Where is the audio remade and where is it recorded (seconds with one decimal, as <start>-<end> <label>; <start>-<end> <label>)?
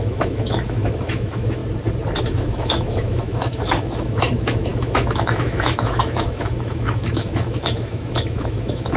0.0-1.6 remade; 1.6-2.2 recorded; 2.2-9.0 remade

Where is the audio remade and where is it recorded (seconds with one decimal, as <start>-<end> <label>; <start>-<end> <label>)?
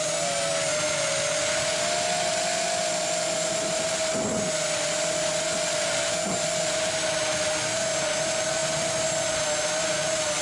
0.0-10.4 recorded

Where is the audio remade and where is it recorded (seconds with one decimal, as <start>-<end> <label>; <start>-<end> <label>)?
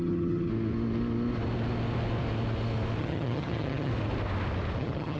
0.0-0.5 remade; 0.5-3.0 recorded; 3.0-3.9 remade; 3.9-4.8 recorded; 4.8-5.2 remade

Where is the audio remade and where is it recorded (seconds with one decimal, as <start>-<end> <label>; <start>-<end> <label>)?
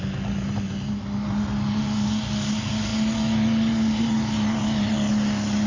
0.0-5.7 recorded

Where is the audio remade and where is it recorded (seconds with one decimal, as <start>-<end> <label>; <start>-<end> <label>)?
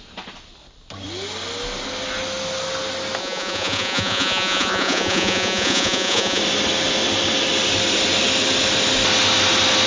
0.0-3.2 recorded; 3.2-6.4 remade; 6.4-9.9 recorded